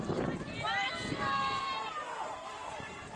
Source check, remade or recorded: remade